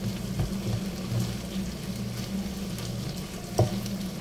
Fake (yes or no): no